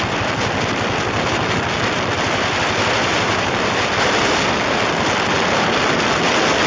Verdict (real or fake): fake